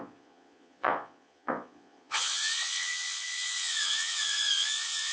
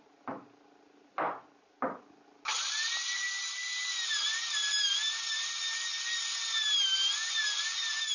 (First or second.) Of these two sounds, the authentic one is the second